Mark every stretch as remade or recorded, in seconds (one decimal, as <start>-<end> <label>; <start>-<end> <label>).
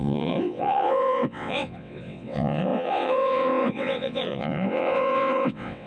0.0-5.9 remade